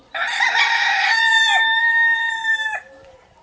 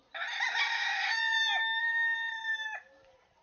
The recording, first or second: second